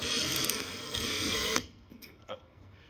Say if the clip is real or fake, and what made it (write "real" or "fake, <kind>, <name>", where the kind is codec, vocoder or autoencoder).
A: fake, codec, SNAC